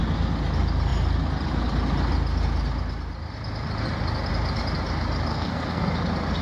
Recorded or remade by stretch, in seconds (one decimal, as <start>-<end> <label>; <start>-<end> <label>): 0.0-5.3 recorded; 5.3-5.9 remade; 5.9-6.4 recorded

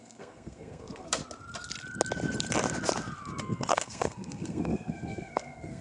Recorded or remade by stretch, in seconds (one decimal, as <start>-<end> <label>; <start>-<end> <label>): 0.0-1.2 remade; 1.2-3.4 recorded; 3.4-5.8 remade

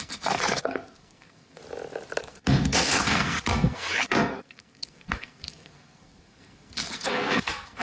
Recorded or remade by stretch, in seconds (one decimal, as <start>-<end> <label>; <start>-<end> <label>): 0.0-1.6 remade; 1.6-2.2 recorded; 2.2-7.8 remade

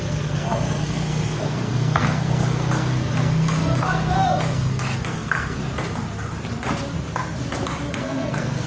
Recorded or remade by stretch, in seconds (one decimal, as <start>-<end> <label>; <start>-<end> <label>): 0.0-5.6 remade; 5.6-7.9 recorded; 7.9-8.7 remade

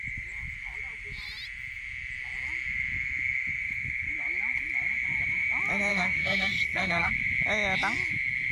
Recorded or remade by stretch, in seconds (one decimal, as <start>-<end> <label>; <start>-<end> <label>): 0.0-5.9 recorded; 5.9-7.1 remade; 7.1-8.5 recorded

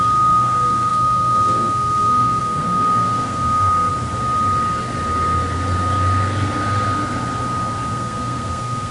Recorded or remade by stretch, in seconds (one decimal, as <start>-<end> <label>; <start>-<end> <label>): 0.0-3.9 remade; 3.9-7.9 recorded; 7.9-8.9 remade

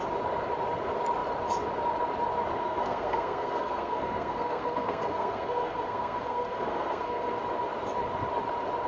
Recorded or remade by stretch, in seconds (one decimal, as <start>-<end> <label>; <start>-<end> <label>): 0.0-2.6 recorded; 2.6-7.4 remade; 7.4-8.9 recorded

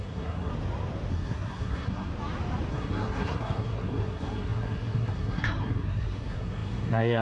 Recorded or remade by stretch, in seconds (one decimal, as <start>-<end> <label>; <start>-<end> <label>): 0.0-0.5 remade; 0.5-1.1 recorded; 1.1-2.1 remade; 2.1-2.7 recorded; 2.7-7.2 remade